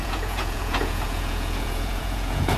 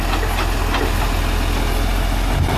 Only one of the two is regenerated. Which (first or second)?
first